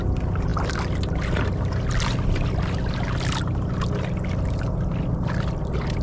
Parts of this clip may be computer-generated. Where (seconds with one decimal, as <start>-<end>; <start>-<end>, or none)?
none